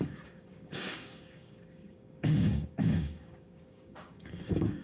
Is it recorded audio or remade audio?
remade